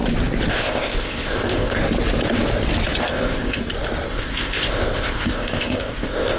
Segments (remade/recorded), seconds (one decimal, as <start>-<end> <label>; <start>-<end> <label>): 0.0-0.5 recorded; 0.5-1.8 remade; 1.8-3.0 recorded; 3.0-3.6 remade; 3.6-4.1 recorded; 4.1-6.4 remade